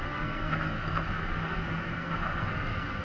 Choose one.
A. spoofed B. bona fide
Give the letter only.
A